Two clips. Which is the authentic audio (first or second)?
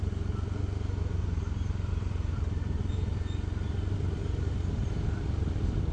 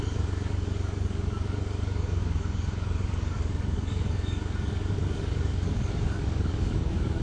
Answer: first